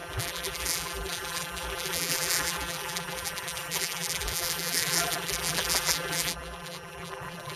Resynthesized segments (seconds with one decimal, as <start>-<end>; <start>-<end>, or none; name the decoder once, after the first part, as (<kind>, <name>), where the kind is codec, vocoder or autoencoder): 0.0-7.6 (vocoder, BigVGAN v2)